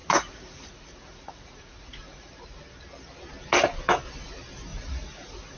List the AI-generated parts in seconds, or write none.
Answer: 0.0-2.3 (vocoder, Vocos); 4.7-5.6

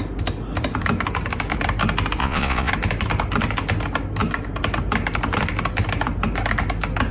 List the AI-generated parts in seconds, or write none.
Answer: 2.2-2.7 (vocoder, Vocos)